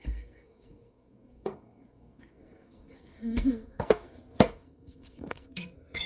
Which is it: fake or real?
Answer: fake